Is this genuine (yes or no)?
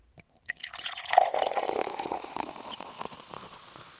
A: no